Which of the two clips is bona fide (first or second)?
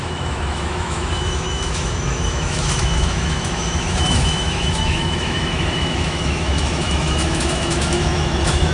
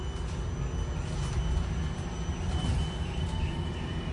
second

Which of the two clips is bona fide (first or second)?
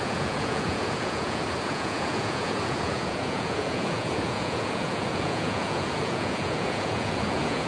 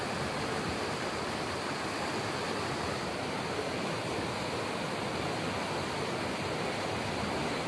second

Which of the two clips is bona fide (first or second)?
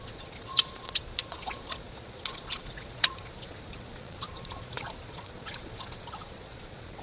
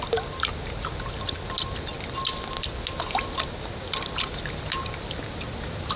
second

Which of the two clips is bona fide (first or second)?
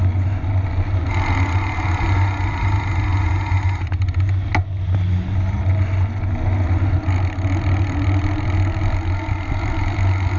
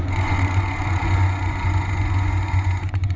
first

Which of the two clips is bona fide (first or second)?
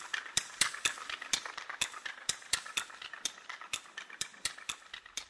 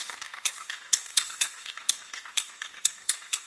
first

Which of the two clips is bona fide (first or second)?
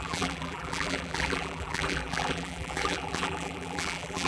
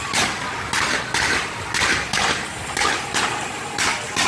second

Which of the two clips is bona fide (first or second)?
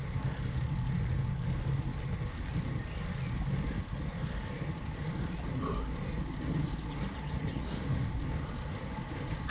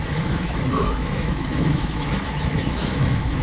first